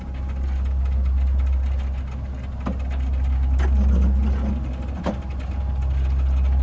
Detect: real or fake real